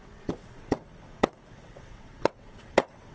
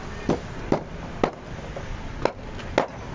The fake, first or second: first